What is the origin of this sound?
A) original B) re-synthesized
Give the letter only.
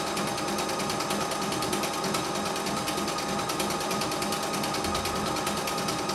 A